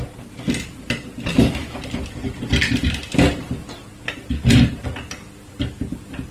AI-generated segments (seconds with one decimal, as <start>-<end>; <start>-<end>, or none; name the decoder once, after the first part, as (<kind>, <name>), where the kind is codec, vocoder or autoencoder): 1.3-1.8 (autoencoder, DAC-VAE)